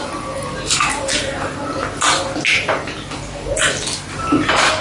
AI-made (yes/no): no